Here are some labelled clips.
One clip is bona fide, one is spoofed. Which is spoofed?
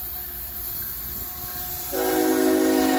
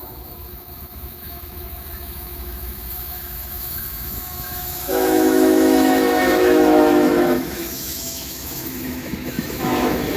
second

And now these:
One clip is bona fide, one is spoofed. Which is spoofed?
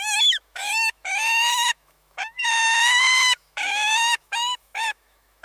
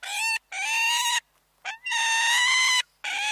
first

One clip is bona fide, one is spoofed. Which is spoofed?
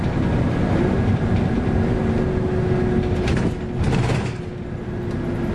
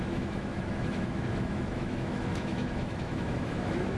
second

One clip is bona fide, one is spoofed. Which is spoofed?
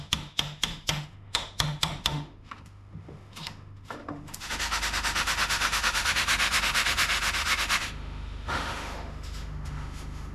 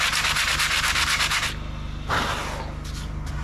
first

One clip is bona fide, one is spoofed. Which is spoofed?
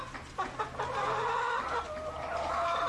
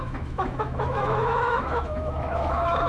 second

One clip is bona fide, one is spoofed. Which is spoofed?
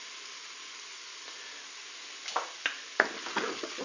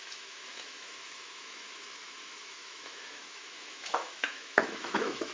second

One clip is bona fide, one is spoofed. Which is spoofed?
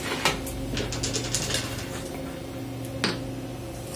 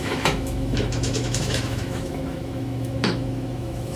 second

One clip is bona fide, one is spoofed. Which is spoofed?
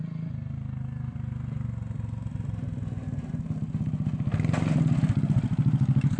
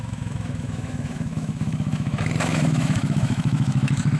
second